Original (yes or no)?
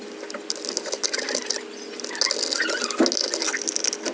yes